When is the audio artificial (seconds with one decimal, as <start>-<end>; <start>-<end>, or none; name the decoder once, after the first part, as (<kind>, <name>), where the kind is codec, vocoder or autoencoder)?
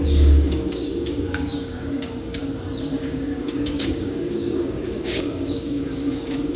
0.0-2.4 (codec, DAC); 2.9-6.6